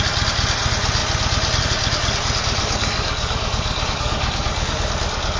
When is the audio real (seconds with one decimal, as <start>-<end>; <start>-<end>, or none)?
0.0-2.6; 4.9-5.4